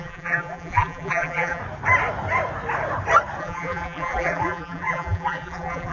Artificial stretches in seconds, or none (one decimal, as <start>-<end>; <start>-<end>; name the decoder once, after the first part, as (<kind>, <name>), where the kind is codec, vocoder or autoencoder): 0.0-1.6 (vocoder, BigVGAN v2); 3.4-5.9